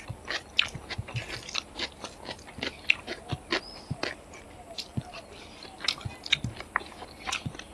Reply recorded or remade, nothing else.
recorded